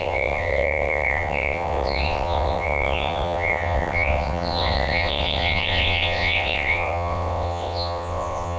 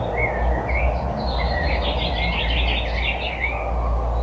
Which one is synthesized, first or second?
first